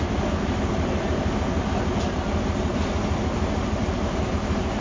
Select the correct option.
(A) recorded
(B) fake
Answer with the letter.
A